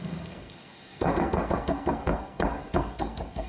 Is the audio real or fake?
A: fake